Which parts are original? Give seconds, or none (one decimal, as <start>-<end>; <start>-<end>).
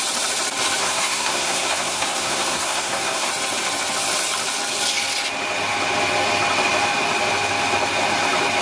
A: 0.0-0.8; 3.3-8.6